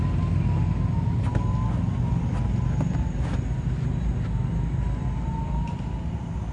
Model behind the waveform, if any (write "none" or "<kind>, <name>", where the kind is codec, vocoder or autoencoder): none